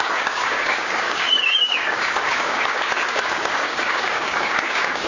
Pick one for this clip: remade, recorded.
remade